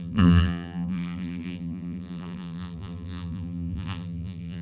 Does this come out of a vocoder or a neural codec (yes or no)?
yes